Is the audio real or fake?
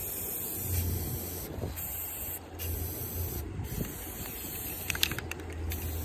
real